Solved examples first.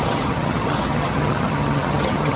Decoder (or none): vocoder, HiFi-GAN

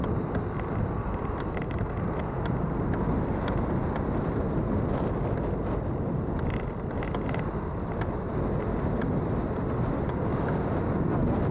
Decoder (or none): none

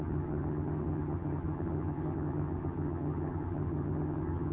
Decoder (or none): vocoder, HiFi-GAN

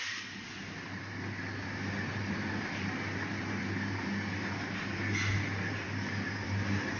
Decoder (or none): none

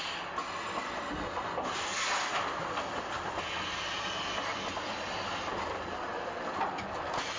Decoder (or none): none